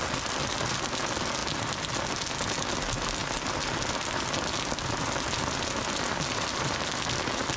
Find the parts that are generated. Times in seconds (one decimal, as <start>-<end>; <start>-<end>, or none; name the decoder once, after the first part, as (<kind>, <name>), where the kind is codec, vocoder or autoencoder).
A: none